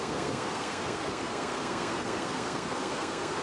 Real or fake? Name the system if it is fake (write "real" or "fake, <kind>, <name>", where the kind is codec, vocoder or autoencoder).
fake, codec, SNAC